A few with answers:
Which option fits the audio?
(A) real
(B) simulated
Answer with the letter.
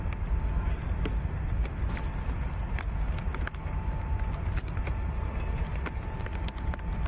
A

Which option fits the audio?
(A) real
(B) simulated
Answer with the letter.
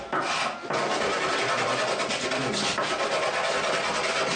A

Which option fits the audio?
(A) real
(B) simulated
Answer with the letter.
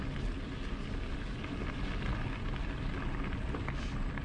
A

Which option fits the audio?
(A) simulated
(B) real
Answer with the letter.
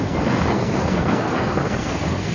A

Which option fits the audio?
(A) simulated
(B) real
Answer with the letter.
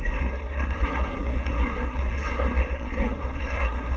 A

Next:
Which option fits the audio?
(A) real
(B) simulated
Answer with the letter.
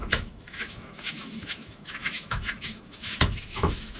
B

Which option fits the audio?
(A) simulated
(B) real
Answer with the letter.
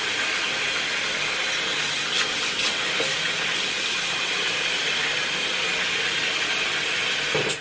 B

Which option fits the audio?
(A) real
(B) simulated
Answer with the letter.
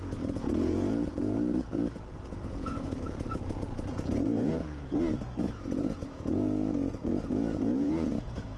B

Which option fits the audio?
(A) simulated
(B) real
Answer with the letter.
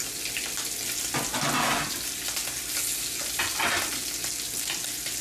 B